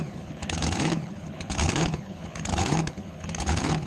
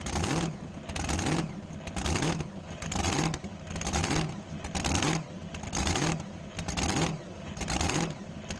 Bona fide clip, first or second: second